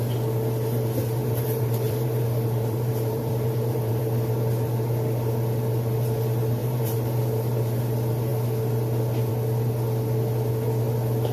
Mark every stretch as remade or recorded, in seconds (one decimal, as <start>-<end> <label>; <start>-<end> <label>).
0.0-1.2 recorded; 1.2-4.0 remade; 4.0-6.6 recorded; 6.6-7.8 remade; 7.8-11.3 recorded

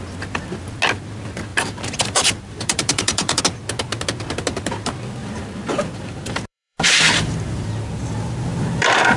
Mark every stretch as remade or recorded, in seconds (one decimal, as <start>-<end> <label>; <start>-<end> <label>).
0.0-1.5 recorded; 1.5-3.4 remade; 3.4-5.2 recorded; 5.2-7.7 remade; 7.7-8.5 recorded; 8.5-9.2 remade

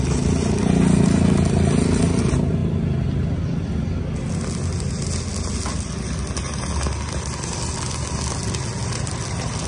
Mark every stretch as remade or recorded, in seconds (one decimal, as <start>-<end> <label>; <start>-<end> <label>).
0.0-9.7 recorded

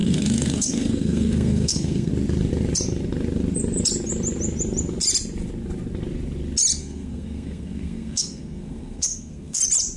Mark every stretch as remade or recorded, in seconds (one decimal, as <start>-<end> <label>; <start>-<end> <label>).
0.0-2.1 remade; 2.1-6.8 recorded; 6.8-9.6 remade; 9.6-10.0 recorded